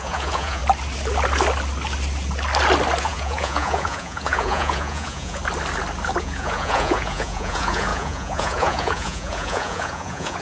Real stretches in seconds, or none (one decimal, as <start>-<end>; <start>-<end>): 0.6-3.0; 5.4-6.2